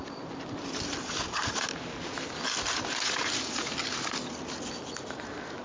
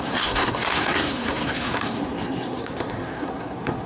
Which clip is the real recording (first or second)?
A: first